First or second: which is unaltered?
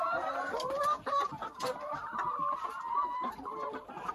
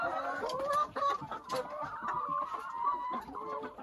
second